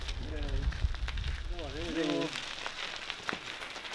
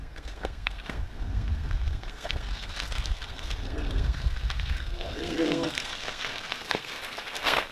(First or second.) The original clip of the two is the first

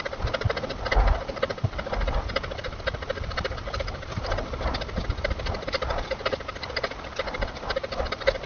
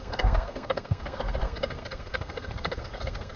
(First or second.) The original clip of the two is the first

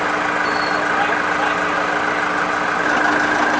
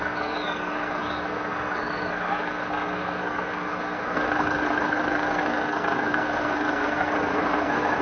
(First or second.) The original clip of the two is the first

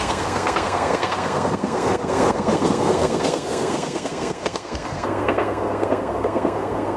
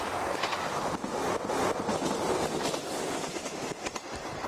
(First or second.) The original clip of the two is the second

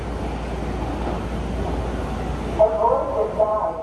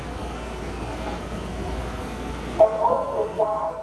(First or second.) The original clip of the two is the first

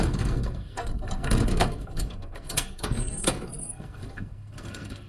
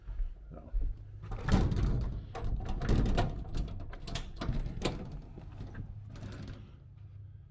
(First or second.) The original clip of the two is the second